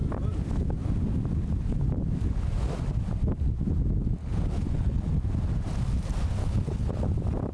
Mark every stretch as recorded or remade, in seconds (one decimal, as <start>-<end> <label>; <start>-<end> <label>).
0.0-4.2 recorded; 4.2-5.1 remade; 5.1-6.4 recorded; 6.4-7.0 remade; 7.0-7.5 recorded